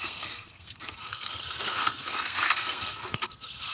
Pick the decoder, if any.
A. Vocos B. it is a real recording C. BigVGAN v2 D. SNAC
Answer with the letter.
D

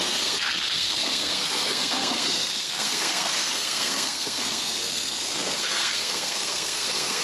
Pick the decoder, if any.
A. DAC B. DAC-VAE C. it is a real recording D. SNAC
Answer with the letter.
D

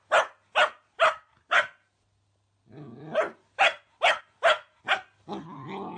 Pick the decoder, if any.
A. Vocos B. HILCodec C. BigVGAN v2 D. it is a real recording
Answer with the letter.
D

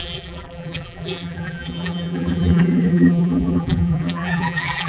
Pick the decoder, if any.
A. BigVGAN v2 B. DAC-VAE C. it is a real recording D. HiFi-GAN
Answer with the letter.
A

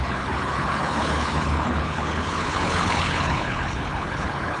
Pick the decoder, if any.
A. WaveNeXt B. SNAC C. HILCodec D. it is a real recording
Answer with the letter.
C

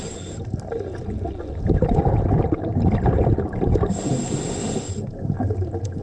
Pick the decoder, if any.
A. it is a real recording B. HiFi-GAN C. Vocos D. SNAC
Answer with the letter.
A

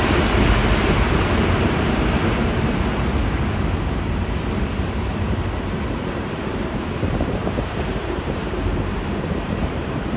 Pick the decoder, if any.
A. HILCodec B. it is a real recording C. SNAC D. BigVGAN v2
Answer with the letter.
D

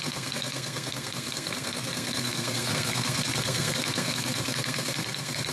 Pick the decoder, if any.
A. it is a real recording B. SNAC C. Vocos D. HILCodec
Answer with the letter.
B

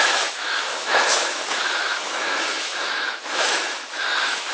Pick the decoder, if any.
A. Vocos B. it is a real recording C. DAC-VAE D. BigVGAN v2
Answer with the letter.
C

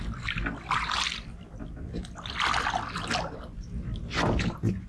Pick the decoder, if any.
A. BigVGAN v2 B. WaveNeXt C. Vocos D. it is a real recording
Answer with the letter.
D